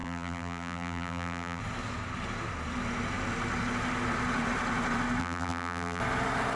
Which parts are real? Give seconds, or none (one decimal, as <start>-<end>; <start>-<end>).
1.6-5.2; 6.0-6.6